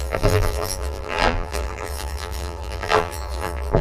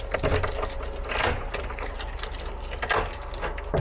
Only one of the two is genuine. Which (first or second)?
second